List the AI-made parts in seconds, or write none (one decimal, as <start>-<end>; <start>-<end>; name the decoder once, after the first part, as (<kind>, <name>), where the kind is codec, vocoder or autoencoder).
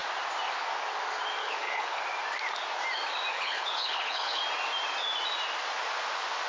1.4-2.0 (codec, HILCodec); 3.3-4.4